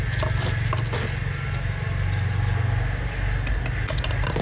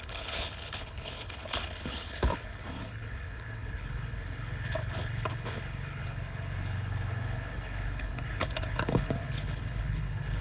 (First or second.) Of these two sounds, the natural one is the first